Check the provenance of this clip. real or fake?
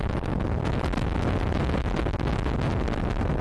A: real